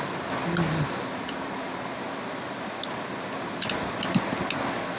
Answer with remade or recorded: recorded